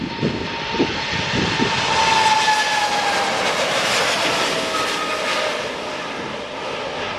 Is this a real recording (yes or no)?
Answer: yes